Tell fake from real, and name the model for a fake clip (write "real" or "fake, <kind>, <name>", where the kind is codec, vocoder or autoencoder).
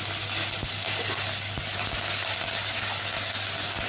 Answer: real